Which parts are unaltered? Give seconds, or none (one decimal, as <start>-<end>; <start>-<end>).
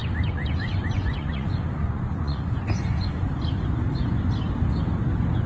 3.3-5.5